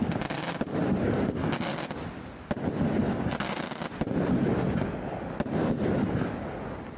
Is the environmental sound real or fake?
real